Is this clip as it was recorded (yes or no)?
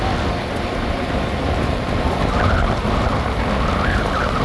yes